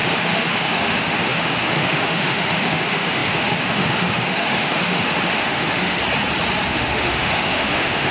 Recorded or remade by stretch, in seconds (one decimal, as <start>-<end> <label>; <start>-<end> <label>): 0.0-6.0 remade; 6.0-6.7 recorded; 6.7-8.1 remade